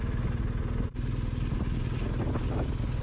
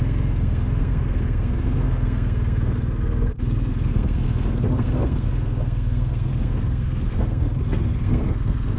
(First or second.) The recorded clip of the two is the first